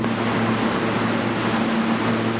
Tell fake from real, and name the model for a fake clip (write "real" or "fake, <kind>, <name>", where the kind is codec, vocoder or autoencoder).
real